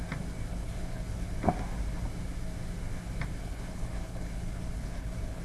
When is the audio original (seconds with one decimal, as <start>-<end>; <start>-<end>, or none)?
0.0-0.5; 1.3-3.4